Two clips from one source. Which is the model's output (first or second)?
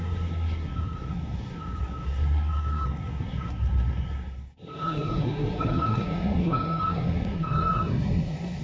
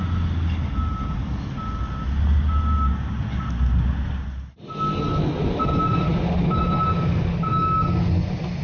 first